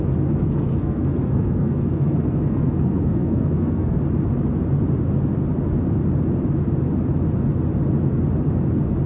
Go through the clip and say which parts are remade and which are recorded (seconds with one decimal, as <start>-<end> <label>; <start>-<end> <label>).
0.0-0.4 recorded; 0.4-4.0 remade; 4.0-9.1 recorded